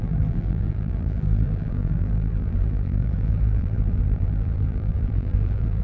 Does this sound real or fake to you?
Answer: fake